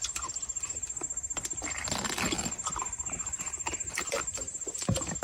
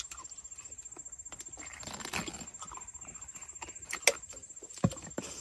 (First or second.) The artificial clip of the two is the first